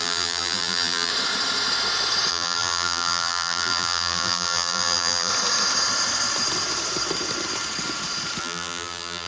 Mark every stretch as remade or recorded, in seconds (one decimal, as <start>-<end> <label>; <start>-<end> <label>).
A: 0.0-1.1 remade; 1.1-2.3 recorded; 2.3-5.3 remade; 5.3-8.4 recorded; 8.4-9.3 remade